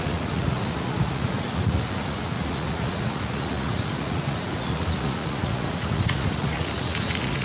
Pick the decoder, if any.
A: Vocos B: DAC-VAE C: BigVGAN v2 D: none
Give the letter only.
A